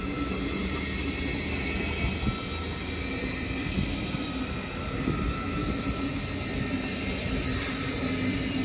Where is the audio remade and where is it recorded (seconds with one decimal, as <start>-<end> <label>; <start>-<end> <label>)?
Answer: 0.0-8.6 recorded